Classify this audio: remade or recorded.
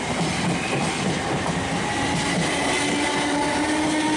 recorded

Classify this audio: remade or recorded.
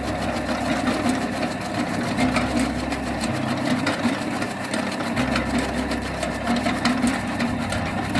recorded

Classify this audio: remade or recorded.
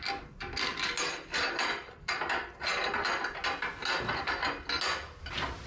recorded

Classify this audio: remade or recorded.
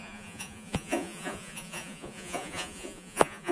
remade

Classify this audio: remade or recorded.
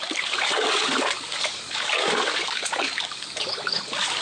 remade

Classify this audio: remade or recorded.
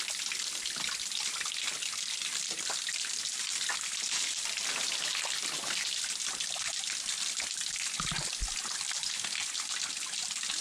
recorded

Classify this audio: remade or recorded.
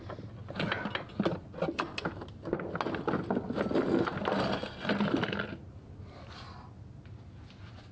recorded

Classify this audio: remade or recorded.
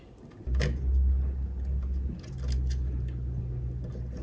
recorded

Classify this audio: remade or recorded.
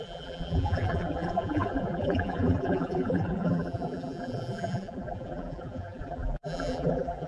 remade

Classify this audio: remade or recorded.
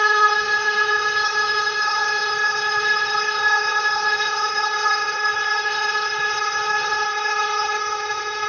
remade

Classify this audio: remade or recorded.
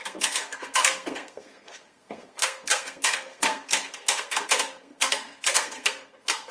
remade